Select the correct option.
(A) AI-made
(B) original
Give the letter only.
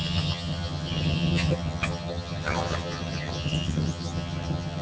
A